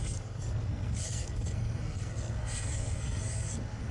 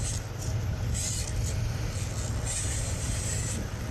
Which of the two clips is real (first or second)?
second